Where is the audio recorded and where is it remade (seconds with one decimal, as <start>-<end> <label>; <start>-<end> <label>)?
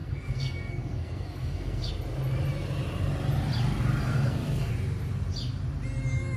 0.0-1.9 remade; 1.9-4.0 recorded; 4.0-4.7 remade; 4.7-6.4 recorded